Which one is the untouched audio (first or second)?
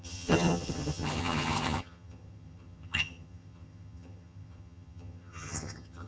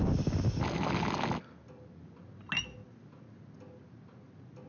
second